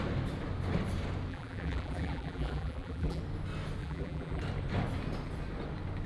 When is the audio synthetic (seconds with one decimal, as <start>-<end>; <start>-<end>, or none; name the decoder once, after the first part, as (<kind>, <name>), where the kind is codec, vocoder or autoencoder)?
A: 1.3-3.2 (vocoder, BigVGAN v2); 3.8-4.4

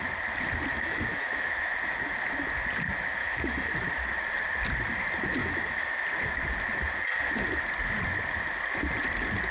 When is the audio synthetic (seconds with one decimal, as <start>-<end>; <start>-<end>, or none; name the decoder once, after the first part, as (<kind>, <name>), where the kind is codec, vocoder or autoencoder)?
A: 0.7-1.7 (autoencoder, DAC-VAE); 3.2-3.7; 5.4-6.0

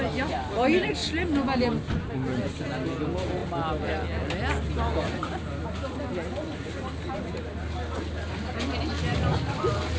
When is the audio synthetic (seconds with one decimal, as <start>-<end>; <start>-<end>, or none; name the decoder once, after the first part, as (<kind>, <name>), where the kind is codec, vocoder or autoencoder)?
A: none

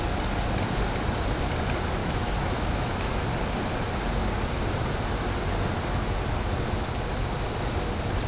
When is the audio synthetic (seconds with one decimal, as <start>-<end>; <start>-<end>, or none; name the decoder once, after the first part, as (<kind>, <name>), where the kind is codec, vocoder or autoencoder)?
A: 2.0-3.2 (autoencoder, DAC-VAE)